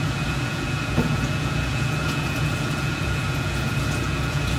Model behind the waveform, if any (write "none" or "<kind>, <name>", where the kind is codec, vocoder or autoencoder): vocoder, Vocos